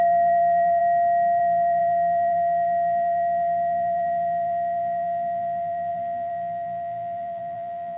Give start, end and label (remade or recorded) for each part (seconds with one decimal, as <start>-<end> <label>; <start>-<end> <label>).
0.0-0.8 remade; 0.8-1.4 recorded; 1.4-8.0 remade